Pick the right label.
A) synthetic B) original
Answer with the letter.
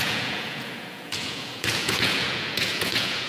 A